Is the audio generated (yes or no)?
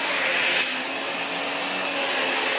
no